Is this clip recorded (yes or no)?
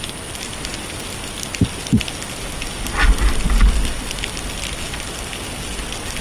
yes